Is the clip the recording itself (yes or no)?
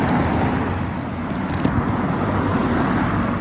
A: yes